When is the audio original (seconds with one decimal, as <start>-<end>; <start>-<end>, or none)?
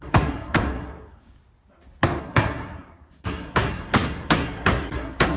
1.4-2.2